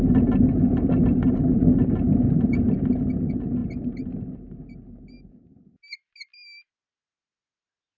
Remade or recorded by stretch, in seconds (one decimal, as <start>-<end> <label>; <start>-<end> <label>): 0.0-8.0 recorded